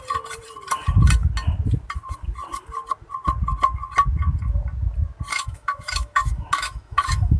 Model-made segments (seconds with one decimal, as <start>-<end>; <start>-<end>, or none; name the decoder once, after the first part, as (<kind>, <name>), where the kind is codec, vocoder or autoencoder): 5.3-7.4 (autoencoder, DAC-VAE)